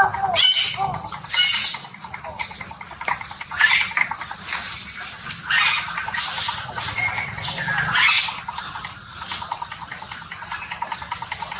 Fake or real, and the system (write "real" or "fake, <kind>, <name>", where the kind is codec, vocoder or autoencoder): real